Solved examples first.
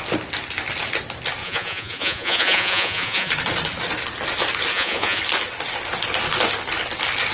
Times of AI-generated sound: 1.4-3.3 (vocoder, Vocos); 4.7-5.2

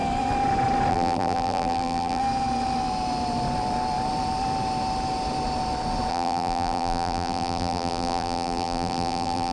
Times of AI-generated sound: 0.9-2.2 (vocoder, BigVGAN v2); 6.1-9.5

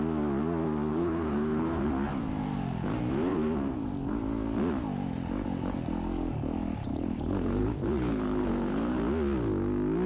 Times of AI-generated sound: 0.9-1.9 (codec, HILCodec); 6.9-9.0

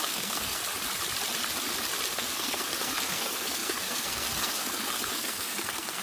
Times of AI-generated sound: 0.0-0.6 (codec, SNAC); 2.1-6.0

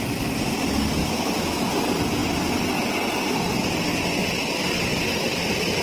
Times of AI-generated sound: 1.0-1.7 (autoencoder, DAC-VAE)

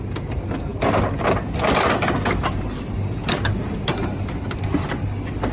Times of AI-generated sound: none

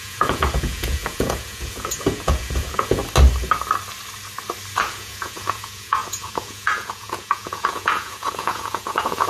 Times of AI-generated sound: 0.0-3.0 (vocoder, Vocos); 4.8-9.3